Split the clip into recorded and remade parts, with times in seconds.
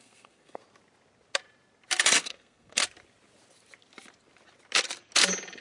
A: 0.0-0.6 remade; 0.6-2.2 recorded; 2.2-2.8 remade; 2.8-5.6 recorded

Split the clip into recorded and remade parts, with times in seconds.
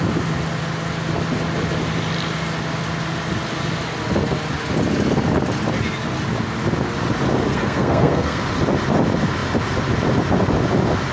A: 0.0-7.5 recorded; 7.5-8.4 remade; 8.4-11.1 recorded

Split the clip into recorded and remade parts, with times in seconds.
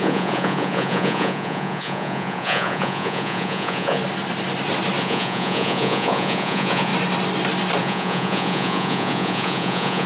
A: 0.0-4.0 remade; 4.0-5.0 recorded; 5.0-6.9 remade; 6.9-7.8 recorded; 7.8-10.1 remade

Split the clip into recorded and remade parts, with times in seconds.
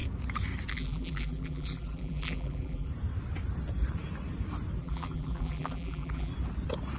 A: 0.0-0.7 recorded; 0.7-2.9 remade; 2.9-4.8 recorded; 4.8-6.3 remade; 6.3-7.0 recorded